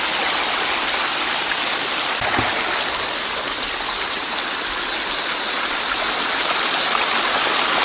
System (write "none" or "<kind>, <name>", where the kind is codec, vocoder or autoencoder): none